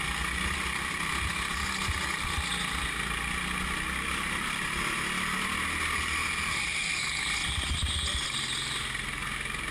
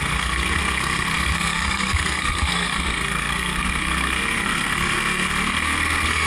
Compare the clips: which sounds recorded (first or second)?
first